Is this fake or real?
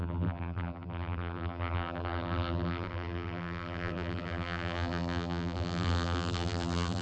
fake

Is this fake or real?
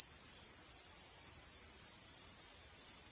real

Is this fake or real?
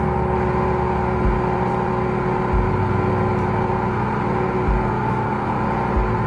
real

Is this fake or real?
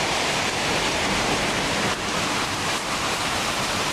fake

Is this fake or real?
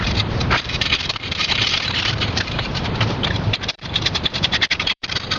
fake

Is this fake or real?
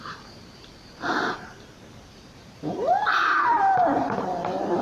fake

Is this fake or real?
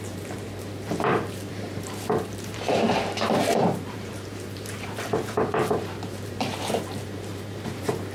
fake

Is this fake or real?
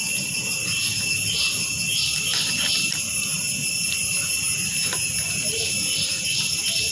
real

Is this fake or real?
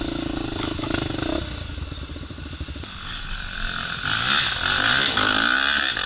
real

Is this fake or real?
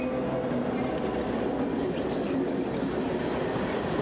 real